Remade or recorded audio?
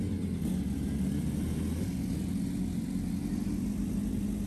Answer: recorded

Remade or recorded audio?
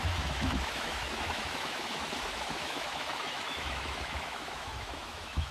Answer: remade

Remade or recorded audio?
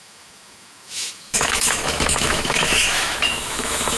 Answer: remade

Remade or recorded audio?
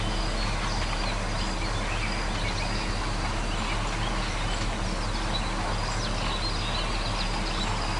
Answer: recorded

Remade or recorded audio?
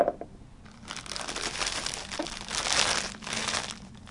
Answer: recorded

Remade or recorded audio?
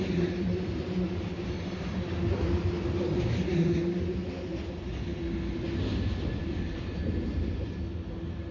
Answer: recorded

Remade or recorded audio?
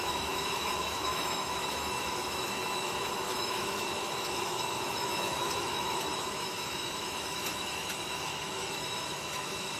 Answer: remade